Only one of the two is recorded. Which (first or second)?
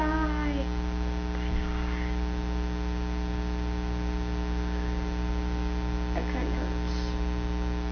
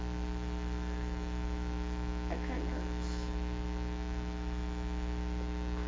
first